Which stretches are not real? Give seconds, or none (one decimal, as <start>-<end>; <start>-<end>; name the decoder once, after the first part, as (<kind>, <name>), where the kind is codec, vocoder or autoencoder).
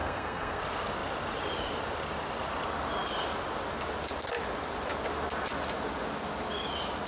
0.0-0.6 (codec, SNAC)